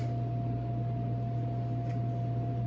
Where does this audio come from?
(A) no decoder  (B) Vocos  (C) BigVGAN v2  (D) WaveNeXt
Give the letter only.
A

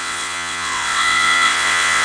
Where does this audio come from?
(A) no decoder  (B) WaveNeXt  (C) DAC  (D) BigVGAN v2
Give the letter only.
B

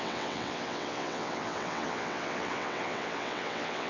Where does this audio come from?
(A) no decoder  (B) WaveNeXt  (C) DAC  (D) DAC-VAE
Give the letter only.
B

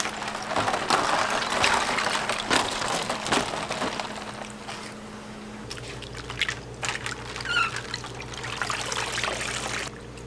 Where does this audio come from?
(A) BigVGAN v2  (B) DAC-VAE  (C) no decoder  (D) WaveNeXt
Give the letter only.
C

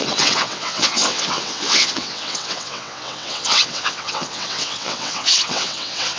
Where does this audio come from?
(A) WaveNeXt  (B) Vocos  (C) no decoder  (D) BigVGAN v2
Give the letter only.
A